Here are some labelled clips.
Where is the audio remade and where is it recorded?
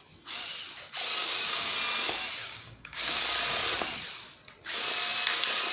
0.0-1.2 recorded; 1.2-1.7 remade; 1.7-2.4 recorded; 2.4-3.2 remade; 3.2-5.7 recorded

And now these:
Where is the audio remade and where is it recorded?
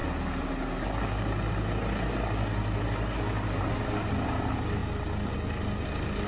0.0-6.3 recorded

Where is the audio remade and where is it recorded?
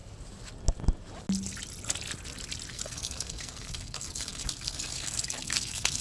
0.0-2.7 recorded; 2.7-6.0 remade